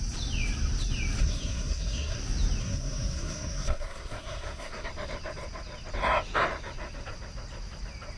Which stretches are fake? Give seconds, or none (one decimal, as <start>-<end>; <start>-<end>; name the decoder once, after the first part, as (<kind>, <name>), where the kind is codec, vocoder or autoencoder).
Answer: 1.2-2.2 (codec, SNAC); 2.6-4.9